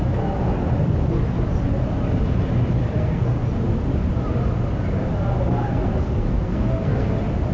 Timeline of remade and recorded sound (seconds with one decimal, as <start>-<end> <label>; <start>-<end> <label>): 0.0-2.8 recorded; 2.8-3.4 remade; 3.4-5.5 recorded; 5.5-7.1 remade; 7.1-7.5 recorded